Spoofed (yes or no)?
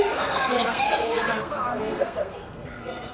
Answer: yes